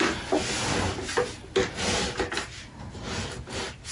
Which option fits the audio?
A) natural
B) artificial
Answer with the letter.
A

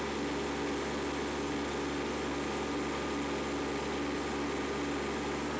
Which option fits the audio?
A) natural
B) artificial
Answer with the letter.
A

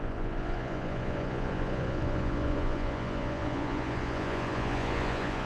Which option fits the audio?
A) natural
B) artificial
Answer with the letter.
B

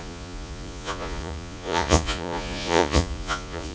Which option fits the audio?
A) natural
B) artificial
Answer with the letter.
B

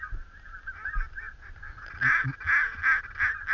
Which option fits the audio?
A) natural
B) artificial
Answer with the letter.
A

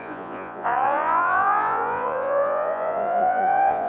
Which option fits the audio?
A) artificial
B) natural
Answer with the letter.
A